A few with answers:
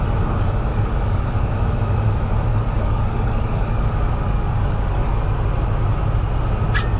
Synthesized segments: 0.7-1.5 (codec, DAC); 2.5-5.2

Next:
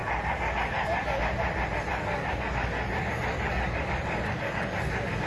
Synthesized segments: 0.0-1.2 (codec, DAC); 1.9-5.3